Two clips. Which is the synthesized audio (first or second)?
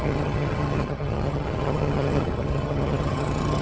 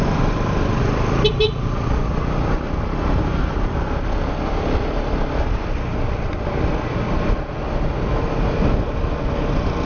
first